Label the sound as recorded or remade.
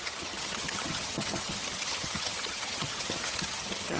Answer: remade